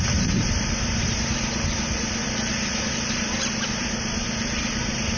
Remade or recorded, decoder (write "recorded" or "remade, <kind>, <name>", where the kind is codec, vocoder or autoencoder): remade, vocoder, BigVGAN v2